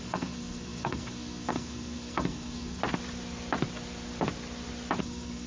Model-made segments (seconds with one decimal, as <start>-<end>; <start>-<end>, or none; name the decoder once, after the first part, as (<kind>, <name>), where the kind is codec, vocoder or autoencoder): 0.0-2.8 (codec, SNAC); 5.0-5.5